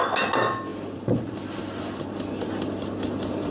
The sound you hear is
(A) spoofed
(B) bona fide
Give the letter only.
B